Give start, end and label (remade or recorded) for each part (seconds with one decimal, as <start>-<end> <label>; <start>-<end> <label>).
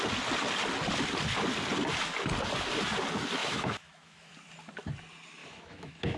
0.0-3.4 recorded; 3.4-4.3 remade; 4.3-5.4 recorded; 5.4-6.2 remade